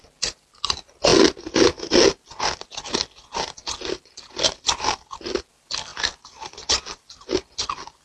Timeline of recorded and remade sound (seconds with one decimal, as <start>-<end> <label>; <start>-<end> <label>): 0.0-8.0 recorded